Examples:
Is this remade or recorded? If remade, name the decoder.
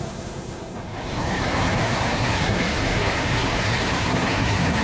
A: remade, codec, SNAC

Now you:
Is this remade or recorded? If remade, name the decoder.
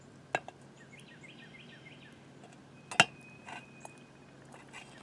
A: recorded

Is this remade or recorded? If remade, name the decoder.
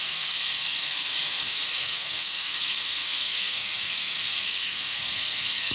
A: remade, codec, SNAC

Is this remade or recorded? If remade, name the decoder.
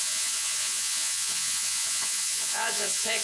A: remade, vocoder, Vocos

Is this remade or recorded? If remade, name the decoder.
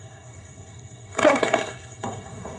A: remade, codec, SNAC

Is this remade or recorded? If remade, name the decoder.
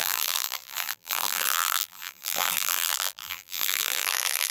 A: remade, vocoder, BigVGAN v2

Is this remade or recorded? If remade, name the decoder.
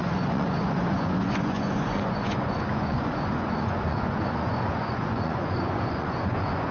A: remade, vocoder, Vocos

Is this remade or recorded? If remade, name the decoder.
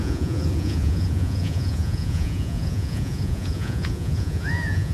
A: remade, vocoder, Vocos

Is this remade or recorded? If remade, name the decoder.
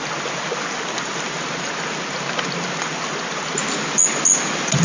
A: recorded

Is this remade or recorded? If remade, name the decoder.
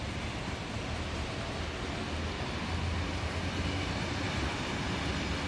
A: recorded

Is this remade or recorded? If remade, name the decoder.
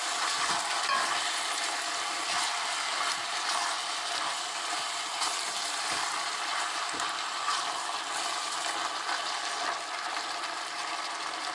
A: recorded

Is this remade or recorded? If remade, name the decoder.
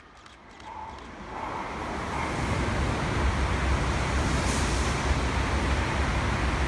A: recorded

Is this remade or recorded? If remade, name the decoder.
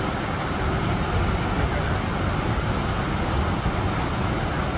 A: recorded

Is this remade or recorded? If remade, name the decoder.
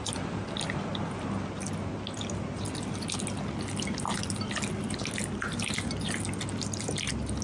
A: recorded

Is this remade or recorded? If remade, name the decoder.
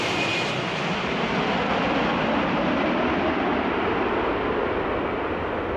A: recorded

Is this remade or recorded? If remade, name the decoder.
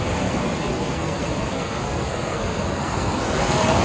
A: remade, codec, SNAC